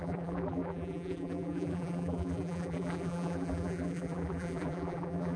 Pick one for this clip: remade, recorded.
remade